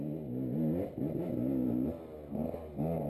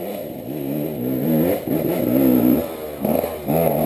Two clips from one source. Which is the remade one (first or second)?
second